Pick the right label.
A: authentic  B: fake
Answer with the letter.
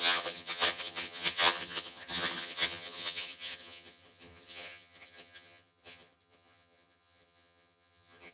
B